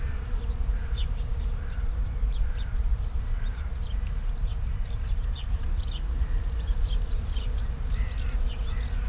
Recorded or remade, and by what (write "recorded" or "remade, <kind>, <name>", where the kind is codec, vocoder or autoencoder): remade, vocoder, BigVGAN v2